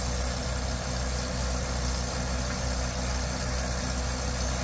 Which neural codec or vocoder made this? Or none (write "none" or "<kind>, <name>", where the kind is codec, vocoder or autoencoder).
none